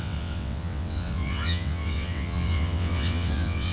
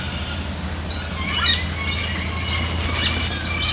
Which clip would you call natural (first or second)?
second